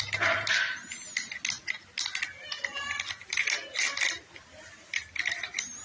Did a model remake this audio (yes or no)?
no